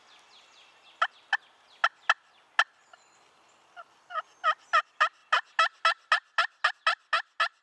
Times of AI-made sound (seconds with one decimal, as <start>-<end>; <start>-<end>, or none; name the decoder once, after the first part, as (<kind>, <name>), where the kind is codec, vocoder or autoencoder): none